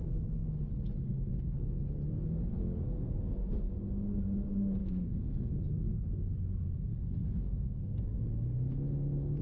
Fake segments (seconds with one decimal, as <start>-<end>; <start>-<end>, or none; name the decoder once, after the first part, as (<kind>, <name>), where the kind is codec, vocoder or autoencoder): 2.5-3.3 (codec, SNAC); 4.8-5.4; 6.9-8.0